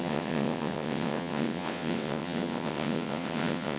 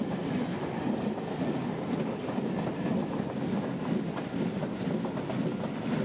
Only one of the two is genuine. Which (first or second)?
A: second